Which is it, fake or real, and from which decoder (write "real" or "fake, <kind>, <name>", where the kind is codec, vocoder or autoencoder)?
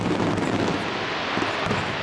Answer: real